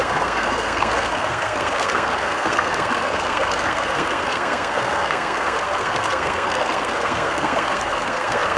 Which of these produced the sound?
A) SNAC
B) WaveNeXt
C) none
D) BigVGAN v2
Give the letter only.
A